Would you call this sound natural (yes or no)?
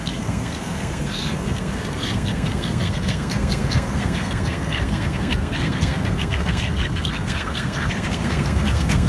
no